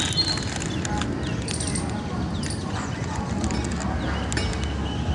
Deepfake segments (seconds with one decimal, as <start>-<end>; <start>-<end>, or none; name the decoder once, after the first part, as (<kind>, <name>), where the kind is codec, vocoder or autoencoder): 2.6-3.2 (vocoder, Vocos)